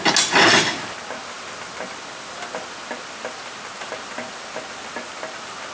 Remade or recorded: recorded